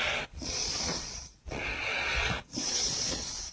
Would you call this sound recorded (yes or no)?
no